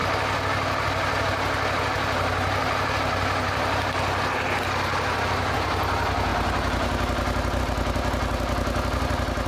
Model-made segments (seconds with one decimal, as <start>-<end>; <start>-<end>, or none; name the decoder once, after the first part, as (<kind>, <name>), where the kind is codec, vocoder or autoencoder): none